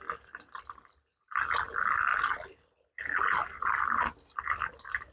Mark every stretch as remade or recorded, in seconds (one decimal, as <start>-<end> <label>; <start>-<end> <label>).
0.0-5.1 recorded